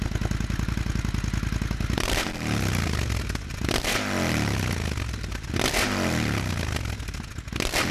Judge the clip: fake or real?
real